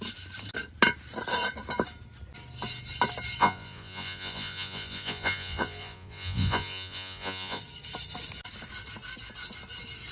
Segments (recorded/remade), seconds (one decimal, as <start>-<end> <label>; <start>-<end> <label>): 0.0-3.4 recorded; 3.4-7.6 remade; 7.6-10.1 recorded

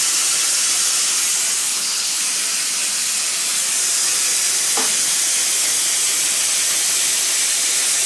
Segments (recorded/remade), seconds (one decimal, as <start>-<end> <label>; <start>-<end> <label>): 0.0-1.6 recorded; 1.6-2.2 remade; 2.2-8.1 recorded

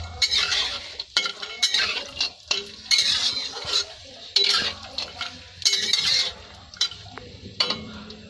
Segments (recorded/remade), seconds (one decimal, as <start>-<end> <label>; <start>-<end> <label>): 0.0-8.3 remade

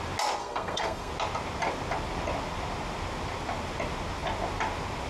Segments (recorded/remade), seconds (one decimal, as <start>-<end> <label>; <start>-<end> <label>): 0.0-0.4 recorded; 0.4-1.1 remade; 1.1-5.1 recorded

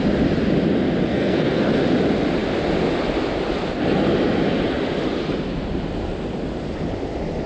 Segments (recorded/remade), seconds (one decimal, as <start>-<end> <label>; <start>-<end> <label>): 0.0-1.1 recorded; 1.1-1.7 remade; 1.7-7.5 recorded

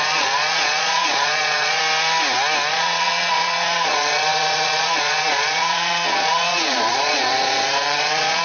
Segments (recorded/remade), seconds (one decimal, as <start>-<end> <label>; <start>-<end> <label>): 0.0-1.8 remade; 1.8-2.7 recorded; 2.7-8.4 remade

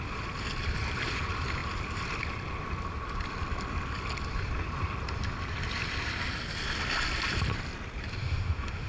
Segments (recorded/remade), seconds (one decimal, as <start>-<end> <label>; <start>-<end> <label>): 0.0-8.2 recorded; 8.2-8.9 remade